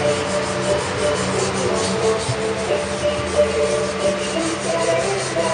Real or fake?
real